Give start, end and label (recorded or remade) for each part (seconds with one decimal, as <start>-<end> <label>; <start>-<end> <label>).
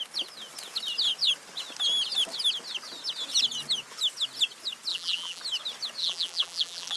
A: 0.0-4.9 recorded; 4.9-5.4 remade; 5.4-6.0 recorded; 6.0-7.0 remade